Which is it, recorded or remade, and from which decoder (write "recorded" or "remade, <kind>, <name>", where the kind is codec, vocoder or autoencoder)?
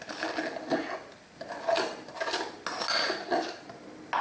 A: recorded